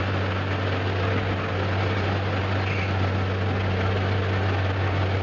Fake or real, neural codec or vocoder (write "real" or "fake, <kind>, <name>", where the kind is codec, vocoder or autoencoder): real